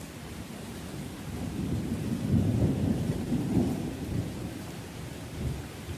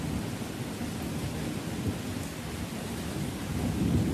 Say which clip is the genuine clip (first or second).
second